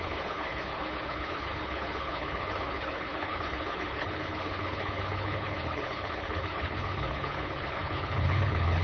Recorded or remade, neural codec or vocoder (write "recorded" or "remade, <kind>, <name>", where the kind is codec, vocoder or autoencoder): remade, codec, HILCodec